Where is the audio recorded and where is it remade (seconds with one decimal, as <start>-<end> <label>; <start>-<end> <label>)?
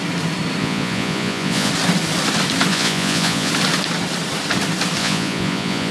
0.0-0.6 recorded; 0.6-1.7 remade; 1.7-2.7 recorded; 2.7-3.5 remade; 3.5-5.0 recorded; 5.0-5.9 remade